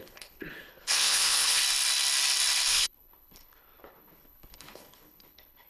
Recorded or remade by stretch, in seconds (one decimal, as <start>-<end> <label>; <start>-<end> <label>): 0.0-1.6 remade; 1.6-2.7 recorded; 2.7-5.7 remade